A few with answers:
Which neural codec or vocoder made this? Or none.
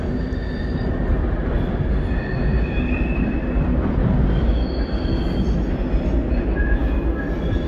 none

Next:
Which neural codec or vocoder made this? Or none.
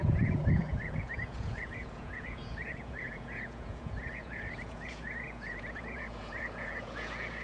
vocoder, Vocos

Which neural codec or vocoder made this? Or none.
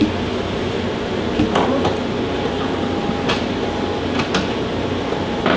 none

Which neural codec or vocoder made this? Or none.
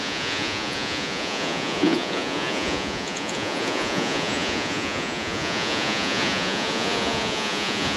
vocoder, Vocos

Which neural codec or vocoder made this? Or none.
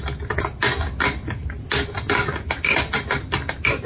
none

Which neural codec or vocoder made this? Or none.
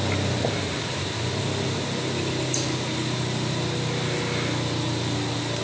none